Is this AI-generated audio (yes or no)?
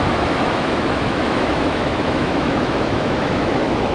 yes